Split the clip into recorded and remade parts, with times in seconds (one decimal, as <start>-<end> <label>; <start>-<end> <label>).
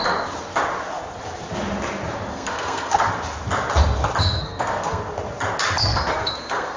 0.0-2.3 recorded; 2.3-3.1 remade; 3.1-4.2 recorded; 4.2-5.0 remade; 5.0-5.8 recorded; 5.8-6.8 remade